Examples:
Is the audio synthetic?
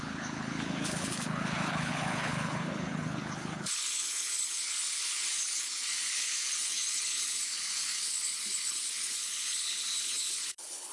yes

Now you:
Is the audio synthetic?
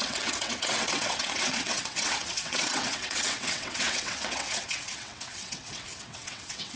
yes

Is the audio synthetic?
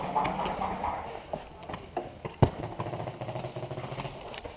no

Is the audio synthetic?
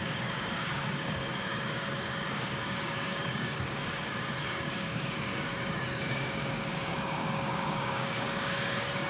yes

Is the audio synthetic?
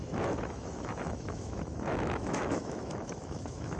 yes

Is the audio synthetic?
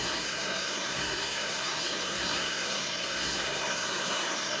yes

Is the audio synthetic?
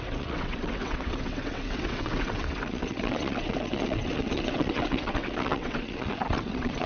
yes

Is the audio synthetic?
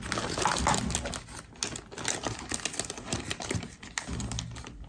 no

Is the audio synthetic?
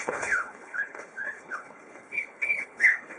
yes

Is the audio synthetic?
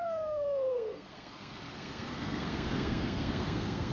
yes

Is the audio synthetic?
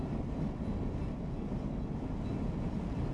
no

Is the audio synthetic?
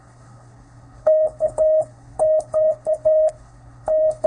yes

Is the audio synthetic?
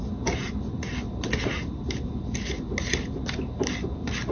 no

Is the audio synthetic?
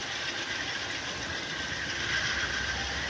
no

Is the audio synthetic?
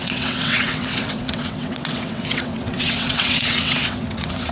yes